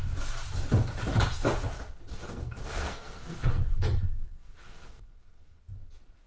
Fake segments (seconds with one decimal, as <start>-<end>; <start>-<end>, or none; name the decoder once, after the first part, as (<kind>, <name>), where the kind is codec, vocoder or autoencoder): 2.1-5.6 (codec, SNAC)